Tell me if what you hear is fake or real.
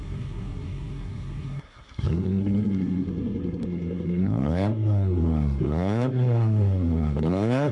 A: fake